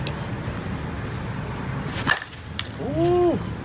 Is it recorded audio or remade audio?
recorded